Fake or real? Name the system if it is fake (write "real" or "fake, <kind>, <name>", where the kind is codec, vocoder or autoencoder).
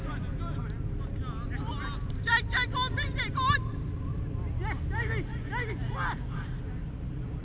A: real